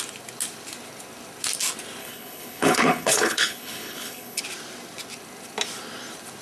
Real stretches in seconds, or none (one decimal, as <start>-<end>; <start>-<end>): 0.0-2.0; 4.4-6.4